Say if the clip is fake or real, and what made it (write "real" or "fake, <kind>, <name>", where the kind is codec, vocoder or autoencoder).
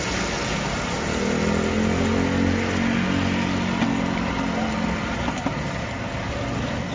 real